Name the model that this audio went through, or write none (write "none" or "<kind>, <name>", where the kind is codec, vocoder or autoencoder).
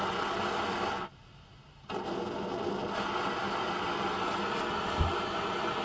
none